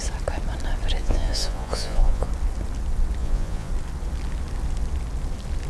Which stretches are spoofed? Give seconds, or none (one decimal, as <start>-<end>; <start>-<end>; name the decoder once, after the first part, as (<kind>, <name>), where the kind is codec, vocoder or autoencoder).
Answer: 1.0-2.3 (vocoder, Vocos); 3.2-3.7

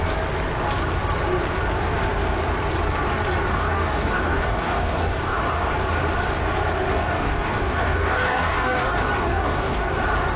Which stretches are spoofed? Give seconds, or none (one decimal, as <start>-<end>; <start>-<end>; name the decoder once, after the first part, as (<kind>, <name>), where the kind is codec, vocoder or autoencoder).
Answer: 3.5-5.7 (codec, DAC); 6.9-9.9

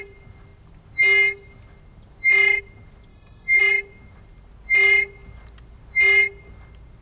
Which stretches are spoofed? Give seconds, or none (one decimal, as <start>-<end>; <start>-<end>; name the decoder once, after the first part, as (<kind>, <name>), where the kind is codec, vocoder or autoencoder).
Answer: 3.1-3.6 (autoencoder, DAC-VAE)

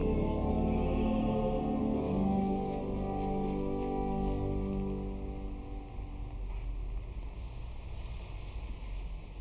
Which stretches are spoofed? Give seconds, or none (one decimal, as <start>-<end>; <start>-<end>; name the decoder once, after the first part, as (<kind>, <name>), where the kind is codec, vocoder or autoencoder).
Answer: 0.0-0.5 (codec, DAC); 1.8-2.8

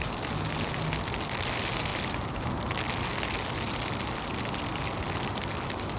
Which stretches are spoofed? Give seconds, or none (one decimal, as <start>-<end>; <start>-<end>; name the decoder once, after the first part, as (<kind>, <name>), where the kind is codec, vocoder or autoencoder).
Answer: none

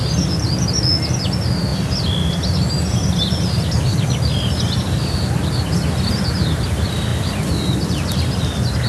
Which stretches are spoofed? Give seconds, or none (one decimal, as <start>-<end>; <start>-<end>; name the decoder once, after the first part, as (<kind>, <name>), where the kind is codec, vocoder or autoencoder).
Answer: none

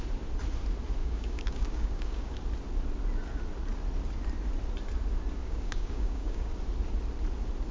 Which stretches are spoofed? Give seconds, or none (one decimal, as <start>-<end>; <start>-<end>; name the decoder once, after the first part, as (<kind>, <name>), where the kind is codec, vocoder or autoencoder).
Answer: 1.0-2.3 (codec, DAC); 5.4-6.5

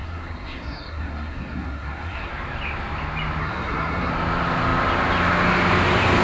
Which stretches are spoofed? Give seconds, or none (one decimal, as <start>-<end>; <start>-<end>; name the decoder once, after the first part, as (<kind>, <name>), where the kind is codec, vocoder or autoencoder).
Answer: 0.0-2.3 (codec, SNAC); 3.4-4.1